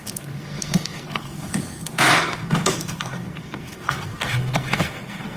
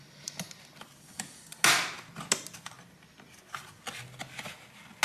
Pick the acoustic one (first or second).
second